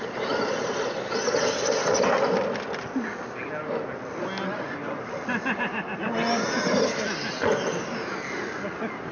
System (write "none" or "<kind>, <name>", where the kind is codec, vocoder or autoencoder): none